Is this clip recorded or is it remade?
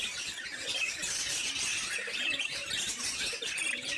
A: recorded